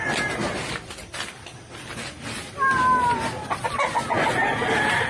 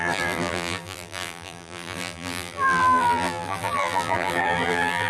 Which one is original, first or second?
first